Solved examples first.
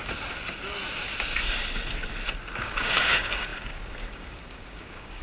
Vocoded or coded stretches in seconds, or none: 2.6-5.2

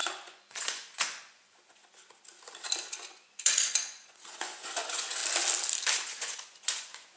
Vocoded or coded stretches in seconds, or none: 0.0-1.8; 2.9-5.2; 5.9-7.2

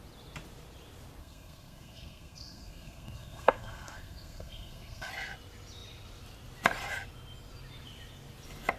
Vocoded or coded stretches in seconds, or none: 1.2-5.1

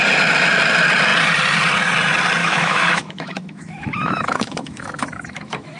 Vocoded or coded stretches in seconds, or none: 2.4-5.8